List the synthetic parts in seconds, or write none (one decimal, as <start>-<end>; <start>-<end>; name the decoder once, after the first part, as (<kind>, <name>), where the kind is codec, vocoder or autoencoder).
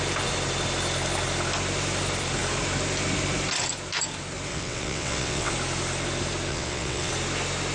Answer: 4.5-5.5 (vocoder, WaveNeXt); 6.5-7.1